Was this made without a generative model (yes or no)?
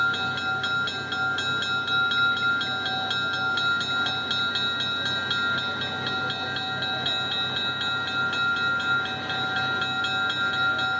yes